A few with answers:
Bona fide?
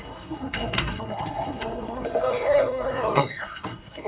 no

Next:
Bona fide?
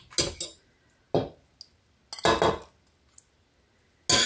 yes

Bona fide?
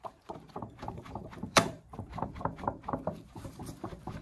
no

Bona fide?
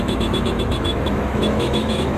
no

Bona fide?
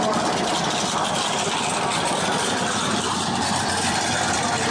yes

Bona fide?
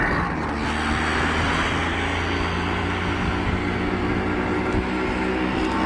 yes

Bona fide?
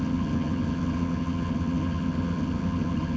no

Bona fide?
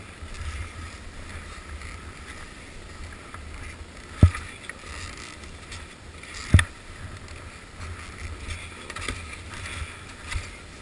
yes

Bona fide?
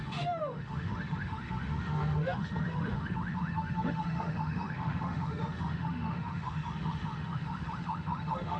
no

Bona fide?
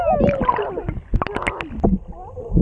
yes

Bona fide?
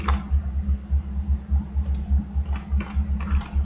yes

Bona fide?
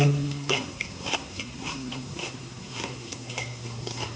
no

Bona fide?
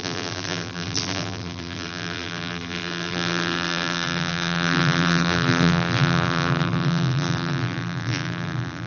no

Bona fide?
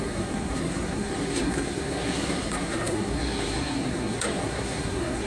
no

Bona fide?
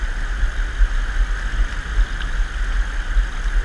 yes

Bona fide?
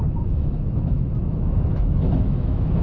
no